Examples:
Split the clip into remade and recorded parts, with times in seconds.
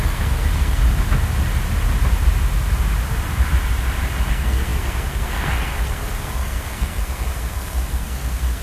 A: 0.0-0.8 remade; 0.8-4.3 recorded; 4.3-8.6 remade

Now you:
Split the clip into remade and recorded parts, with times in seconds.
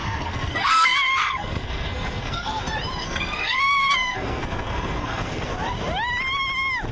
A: 0.0-2.6 remade; 2.6-3.0 recorded; 3.0-5.5 remade; 5.5-6.9 recorded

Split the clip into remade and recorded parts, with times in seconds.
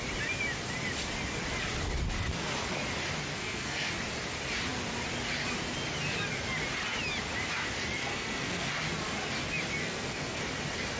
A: 0.0-3.3 recorded; 3.3-3.9 remade; 3.9-8.0 recorded; 8.0-8.7 remade; 8.7-9.8 recorded; 9.8-10.4 remade; 10.4-11.0 recorded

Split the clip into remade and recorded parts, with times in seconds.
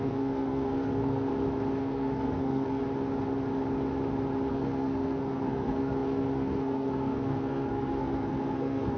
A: 0.0-1.3 remade; 1.3-1.8 recorded; 1.8-2.8 remade; 2.8-4.5 recorded; 4.5-9.0 remade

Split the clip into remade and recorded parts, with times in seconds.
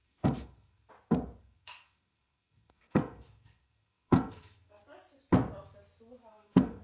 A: 0.0-0.9 remade; 0.9-1.4 recorded; 1.4-4.8 remade; 4.8-6.3 recorded; 6.3-6.8 remade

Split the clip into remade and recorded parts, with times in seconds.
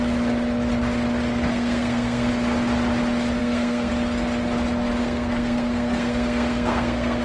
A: 0.0-1.5 recorded; 1.5-2.3 remade; 2.3-3.4 recorded; 3.4-3.9 remade; 3.9-5.0 recorded; 5.0-7.2 remade